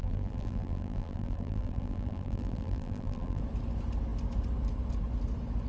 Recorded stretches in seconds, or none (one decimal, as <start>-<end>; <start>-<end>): 3.4-5.7